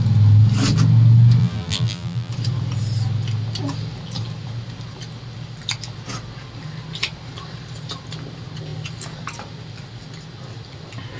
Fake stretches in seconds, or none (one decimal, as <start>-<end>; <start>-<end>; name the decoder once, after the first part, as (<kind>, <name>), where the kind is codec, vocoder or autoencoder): 1.4-2.3 (vocoder, BigVGAN v2)